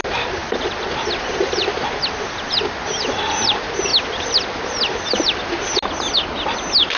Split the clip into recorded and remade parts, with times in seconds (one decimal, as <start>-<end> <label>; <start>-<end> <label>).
0.0-7.0 recorded